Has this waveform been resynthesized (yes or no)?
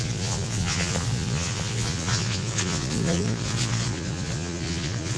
yes